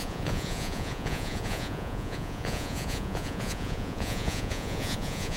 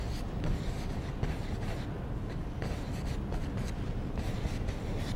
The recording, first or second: second